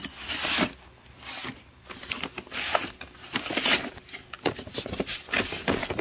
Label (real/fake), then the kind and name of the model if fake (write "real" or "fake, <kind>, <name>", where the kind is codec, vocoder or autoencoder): real